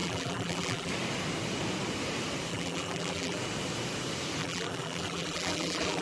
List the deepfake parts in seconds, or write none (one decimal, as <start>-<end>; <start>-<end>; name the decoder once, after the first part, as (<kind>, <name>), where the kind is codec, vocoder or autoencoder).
0.0-0.9 (vocoder, BigVGAN v2); 2.5-3.4; 4.4-6.0